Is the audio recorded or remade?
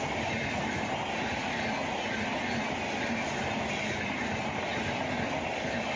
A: recorded